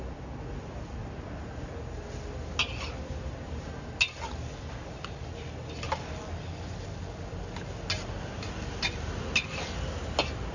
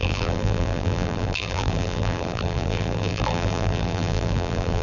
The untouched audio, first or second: first